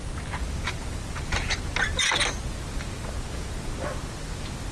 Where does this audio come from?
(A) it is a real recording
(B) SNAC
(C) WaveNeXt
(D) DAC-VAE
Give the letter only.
A